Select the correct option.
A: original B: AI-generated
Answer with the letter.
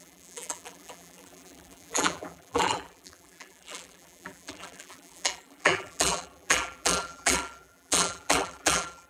B